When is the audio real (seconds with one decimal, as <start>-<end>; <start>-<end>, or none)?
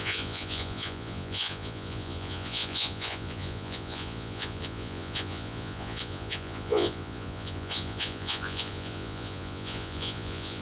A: none